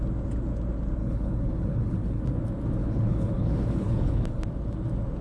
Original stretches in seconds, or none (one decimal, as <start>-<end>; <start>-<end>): 0.0-1.0; 2.2-2.8; 4.4-5.2